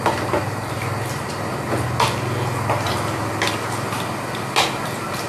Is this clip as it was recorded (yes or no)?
yes